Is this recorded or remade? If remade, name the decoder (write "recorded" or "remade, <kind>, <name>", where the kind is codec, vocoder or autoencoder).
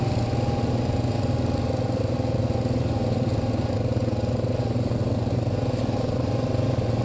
recorded